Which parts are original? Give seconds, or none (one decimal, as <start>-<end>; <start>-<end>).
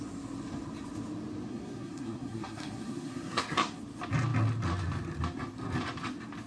0.0-1.5; 3.8-6.5